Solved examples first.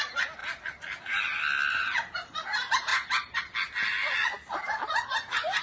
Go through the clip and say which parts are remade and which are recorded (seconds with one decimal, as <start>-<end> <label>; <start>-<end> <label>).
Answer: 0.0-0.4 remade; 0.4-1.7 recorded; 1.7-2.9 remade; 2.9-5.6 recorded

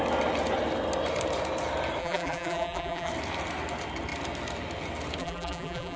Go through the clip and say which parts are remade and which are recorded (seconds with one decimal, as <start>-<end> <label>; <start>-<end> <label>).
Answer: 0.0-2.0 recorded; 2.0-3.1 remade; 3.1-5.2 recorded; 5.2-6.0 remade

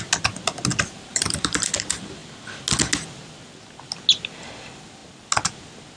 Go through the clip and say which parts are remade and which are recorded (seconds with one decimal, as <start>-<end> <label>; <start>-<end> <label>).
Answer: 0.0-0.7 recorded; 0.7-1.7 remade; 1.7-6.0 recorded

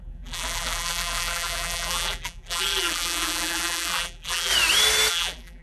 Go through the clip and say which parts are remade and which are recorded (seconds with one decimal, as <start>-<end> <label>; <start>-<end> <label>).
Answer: 0.0-4.5 remade; 4.5-5.1 recorded; 5.1-5.6 remade

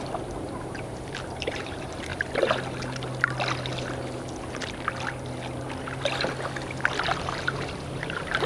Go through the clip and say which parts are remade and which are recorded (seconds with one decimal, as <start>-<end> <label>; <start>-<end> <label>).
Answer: 0.0-2.1 remade; 2.1-7.2 recorded; 7.2-8.5 remade